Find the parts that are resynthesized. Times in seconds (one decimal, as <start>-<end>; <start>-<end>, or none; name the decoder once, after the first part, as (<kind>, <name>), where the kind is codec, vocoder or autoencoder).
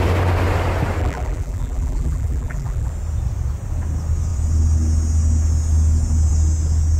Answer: 1.0-2.9 (vocoder, BigVGAN v2)